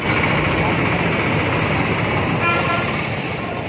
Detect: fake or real fake